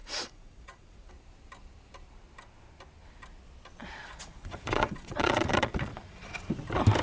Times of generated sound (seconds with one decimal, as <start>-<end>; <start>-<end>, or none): 0.0-1.1; 3.8-6.4